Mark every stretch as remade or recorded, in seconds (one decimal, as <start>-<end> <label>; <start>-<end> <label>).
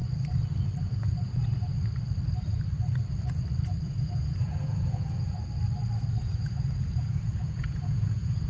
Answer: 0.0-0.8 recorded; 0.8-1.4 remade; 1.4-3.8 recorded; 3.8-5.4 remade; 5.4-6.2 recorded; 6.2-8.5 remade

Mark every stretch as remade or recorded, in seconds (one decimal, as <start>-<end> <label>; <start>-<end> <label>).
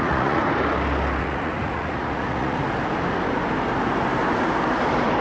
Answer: 0.0-0.4 remade; 0.4-1.2 recorded; 1.2-2.6 remade; 2.6-5.2 recorded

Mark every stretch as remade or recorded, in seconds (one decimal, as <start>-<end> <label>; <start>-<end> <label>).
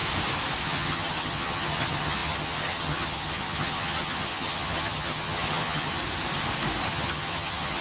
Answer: 0.0-0.6 recorded; 0.6-6.0 remade; 6.0-6.9 recorded; 6.9-7.8 remade